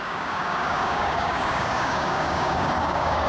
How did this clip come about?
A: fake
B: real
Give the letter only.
A